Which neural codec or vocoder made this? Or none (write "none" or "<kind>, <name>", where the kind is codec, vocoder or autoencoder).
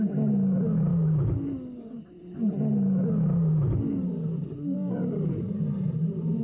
none